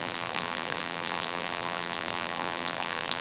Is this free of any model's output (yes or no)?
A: no